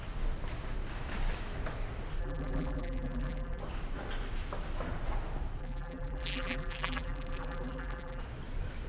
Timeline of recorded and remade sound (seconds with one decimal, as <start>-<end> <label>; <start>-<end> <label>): 0.0-2.2 recorded; 2.2-3.6 remade; 3.6-5.6 recorded; 5.6-8.2 remade; 8.2-8.9 recorded